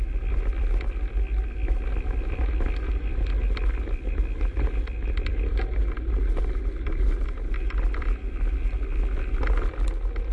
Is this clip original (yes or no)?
yes